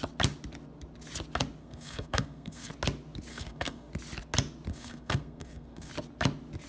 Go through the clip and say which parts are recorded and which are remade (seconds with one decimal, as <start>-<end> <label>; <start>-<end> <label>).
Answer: 0.0-1.6 recorded; 1.6-2.7 remade; 2.7-3.3 recorded; 3.3-3.9 remade; 3.9-4.7 recorded; 4.7-5.9 remade; 5.9-6.7 recorded